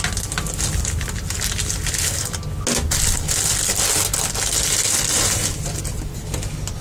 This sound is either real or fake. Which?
real